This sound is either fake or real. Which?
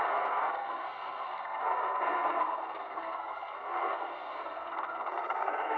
fake